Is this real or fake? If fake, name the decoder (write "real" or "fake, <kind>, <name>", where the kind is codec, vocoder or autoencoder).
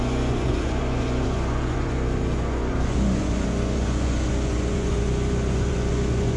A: fake, vocoder, Vocos